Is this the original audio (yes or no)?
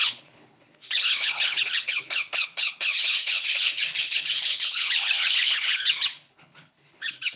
no